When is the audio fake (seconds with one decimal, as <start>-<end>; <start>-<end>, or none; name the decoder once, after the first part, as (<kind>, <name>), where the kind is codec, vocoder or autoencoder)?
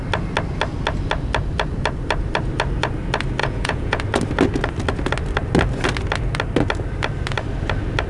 3.4-4.0 (vocoder, Vocos)